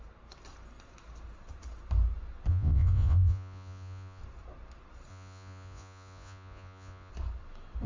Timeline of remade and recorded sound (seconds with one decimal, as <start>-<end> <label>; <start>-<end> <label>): 0.0-2.5 recorded; 2.5-4.2 remade; 4.2-5.1 recorded; 5.1-7.1 remade; 7.1-7.9 recorded